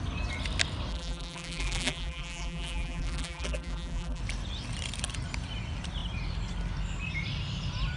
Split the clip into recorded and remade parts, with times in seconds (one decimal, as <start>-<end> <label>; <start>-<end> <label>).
0.0-0.9 recorded; 0.9-4.2 remade; 4.2-8.0 recorded